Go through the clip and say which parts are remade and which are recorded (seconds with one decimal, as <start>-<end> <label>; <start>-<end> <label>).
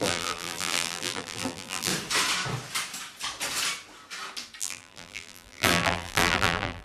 0.0-1.9 remade; 1.9-4.6 recorded; 4.6-6.8 remade